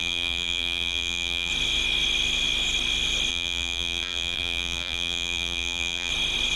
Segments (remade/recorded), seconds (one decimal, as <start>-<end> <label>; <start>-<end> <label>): 0.0-1.5 remade; 1.5-3.3 recorded; 3.3-6.1 remade; 6.1-6.6 recorded